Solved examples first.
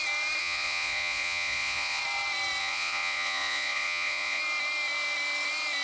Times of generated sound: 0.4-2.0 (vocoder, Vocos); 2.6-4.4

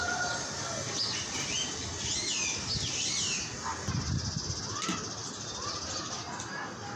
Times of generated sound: 5.2-5.8 (vocoder, BigVGAN v2)

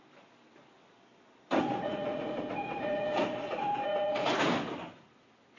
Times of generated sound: 1.6-4.3 (vocoder, Vocos)

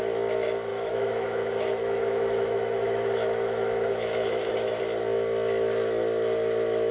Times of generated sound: 0.7-4.8 (autoencoder, DAC-VAE)

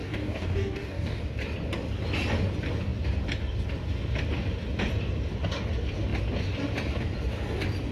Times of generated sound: 0.0-1.2 (codec, DAC)

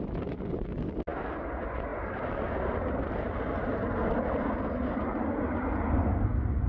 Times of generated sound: none

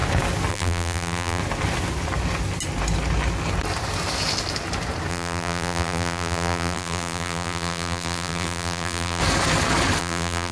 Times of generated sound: 0.5-1.4 (vocoder, BigVGAN v2); 5.1-9.2; 10.0-10.5

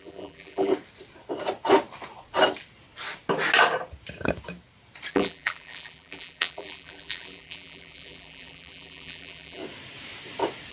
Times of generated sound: 0.0-0.7 (vocoder, BigVGAN v2); 5.1-9.6